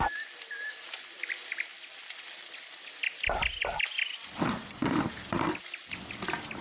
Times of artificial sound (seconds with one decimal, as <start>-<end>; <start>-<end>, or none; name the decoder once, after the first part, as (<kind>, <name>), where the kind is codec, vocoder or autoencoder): none